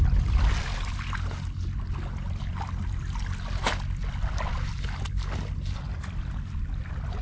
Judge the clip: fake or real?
real